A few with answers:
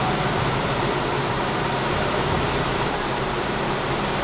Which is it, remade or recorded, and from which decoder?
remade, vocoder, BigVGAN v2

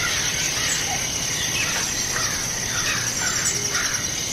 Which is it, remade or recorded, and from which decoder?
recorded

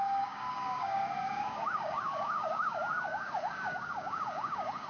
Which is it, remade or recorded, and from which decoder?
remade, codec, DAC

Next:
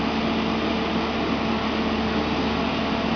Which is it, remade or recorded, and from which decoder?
recorded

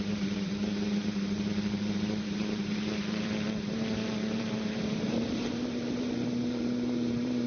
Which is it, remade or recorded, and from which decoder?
remade, vocoder, BigVGAN v2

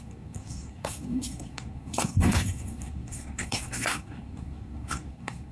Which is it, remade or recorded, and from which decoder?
remade, codec, SNAC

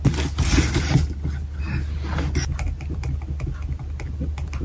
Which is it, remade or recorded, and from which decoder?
recorded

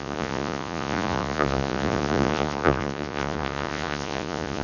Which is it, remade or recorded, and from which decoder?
remade, vocoder, Vocos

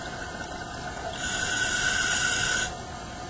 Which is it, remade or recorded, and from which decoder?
recorded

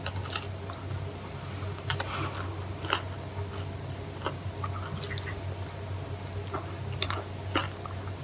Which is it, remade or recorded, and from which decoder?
recorded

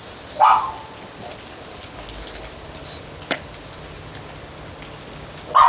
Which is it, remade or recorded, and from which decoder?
recorded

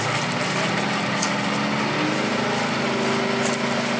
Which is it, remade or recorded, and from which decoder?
recorded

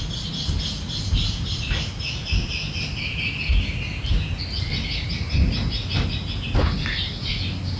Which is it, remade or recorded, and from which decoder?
recorded